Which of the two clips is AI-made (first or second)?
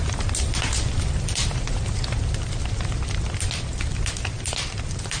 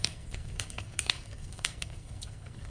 second